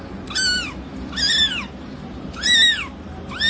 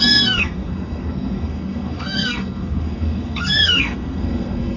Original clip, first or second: first